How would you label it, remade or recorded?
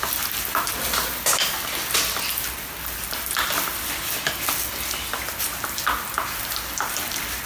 recorded